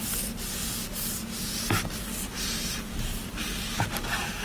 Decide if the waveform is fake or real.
real